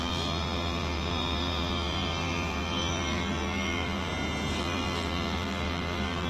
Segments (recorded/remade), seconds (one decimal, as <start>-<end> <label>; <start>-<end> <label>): 0.0-4.1 remade; 4.1-4.6 recorded; 4.6-6.3 remade